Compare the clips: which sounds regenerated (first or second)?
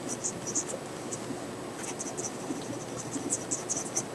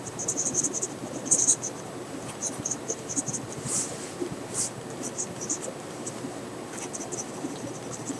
second